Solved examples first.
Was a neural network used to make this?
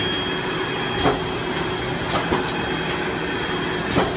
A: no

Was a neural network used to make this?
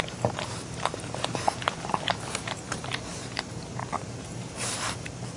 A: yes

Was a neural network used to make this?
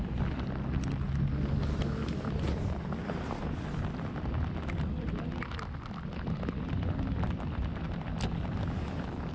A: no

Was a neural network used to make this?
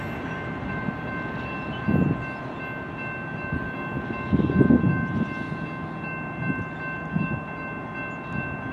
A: no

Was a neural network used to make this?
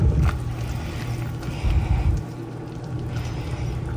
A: no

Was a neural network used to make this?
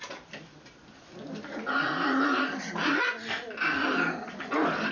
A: no